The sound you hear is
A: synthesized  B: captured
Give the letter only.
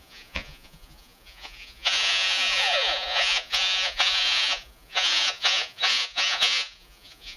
A